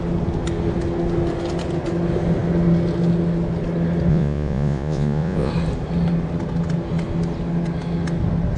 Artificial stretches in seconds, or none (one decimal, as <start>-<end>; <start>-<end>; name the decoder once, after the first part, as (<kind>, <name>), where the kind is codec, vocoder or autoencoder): 4.1-5.5 (vocoder, Vocos)